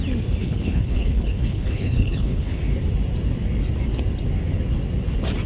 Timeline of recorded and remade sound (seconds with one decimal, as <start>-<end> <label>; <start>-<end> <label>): 0.0-0.4 recorded; 0.4-2.6 remade; 2.6-5.5 recorded